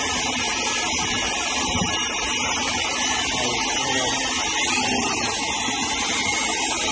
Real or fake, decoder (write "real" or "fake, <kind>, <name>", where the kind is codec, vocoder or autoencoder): real